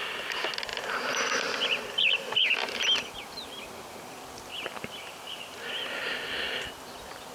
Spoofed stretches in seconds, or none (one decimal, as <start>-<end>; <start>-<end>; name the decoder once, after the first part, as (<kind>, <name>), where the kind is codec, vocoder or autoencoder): 0.7-1.3 (vocoder, BigVGAN v2)